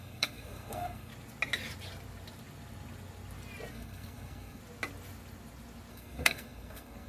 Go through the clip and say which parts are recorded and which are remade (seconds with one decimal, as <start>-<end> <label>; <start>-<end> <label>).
0.0-1.1 remade; 1.1-3.7 recorded; 3.7-4.6 remade; 4.6-5.9 recorded; 5.9-7.1 remade